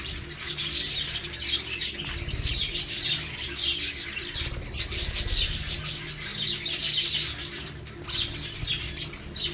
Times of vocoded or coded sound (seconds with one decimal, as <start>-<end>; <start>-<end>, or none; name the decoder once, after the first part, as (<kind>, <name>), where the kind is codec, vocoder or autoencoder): none

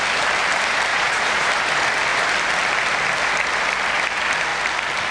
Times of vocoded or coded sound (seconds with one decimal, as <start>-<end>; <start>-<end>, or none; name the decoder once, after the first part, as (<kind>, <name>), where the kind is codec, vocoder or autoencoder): 0.9-1.5 (vocoder, Vocos)

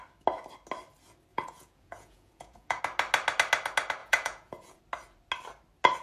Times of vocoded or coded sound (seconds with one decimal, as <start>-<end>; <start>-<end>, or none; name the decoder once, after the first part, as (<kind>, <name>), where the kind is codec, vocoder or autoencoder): 1.3-2.8 (vocoder, Vocos); 4.0-4.8